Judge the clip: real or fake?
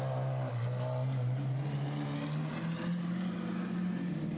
real